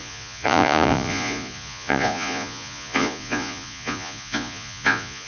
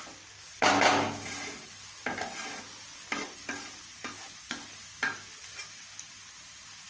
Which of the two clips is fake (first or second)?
first